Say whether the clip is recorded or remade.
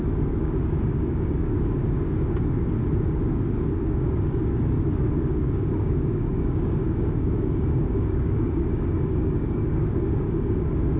remade